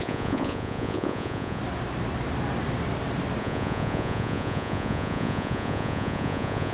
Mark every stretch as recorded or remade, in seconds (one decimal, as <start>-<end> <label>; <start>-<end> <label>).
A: 0.0-1.6 remade; 1.6-3.4 recorded; 3.4-6.7 remade